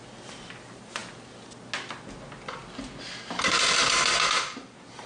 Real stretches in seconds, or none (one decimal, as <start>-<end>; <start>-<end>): 0.0-5.1